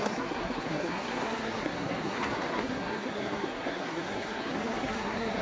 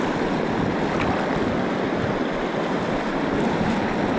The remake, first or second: first